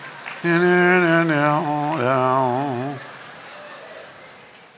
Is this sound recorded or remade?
recorded